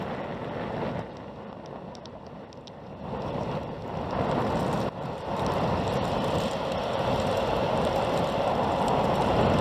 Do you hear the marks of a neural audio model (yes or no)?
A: no